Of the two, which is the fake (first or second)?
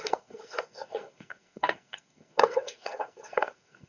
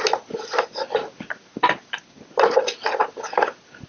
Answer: first